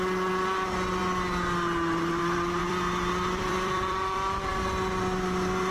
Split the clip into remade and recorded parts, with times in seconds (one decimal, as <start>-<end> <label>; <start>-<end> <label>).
0.0-2.6 recorded; 2.6-4.5 remade; 4.5-5.7 recorded